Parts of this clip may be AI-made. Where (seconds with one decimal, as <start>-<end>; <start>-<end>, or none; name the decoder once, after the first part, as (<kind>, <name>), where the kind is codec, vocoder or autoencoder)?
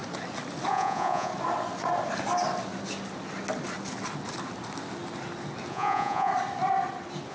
0.7-1.3 (vocoder, Vocos); 5.7-6.3